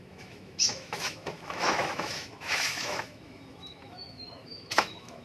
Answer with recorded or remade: remade